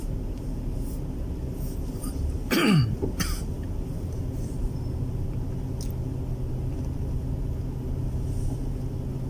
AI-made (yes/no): no